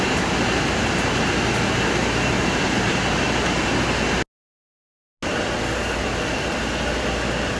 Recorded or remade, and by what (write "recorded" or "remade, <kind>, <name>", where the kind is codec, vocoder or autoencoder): recorded